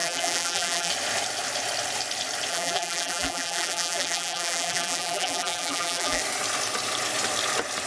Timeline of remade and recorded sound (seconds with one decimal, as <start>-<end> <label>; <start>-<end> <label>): 0.0-0.9 remade; 0.9-2.5 recorded; 2.5-6.2 remade; 6.2-7.9 recorded